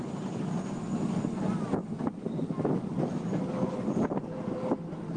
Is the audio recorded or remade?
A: recorded